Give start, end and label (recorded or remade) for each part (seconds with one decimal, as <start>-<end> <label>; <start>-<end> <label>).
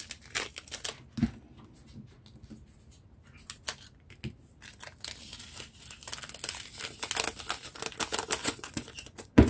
0.0-8.4 recorded; 8.4-9.5 remade